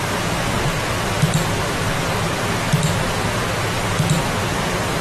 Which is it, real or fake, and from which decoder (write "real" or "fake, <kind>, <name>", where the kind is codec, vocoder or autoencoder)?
real